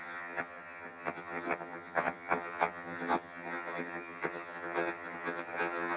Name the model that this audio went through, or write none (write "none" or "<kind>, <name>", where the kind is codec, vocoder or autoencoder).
vocoder, HiFi-GAN